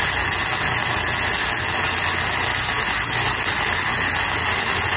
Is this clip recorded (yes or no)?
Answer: yes